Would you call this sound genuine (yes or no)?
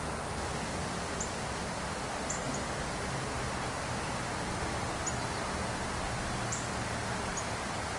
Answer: yes